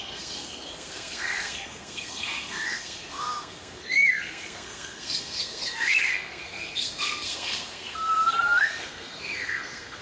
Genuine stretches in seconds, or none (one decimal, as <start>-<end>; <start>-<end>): none